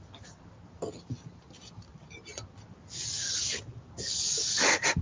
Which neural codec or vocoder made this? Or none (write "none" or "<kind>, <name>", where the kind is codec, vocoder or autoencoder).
none